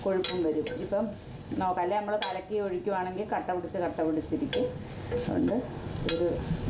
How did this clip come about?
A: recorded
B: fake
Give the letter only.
A